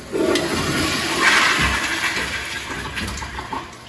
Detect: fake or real real